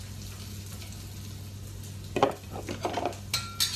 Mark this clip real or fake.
real